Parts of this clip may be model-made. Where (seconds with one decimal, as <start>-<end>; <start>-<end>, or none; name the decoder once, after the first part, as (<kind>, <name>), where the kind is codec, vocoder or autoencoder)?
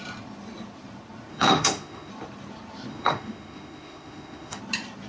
1.3-2.1 (autoencoder, DAC-VAE); 2.9-4.6